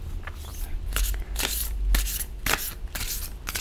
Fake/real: real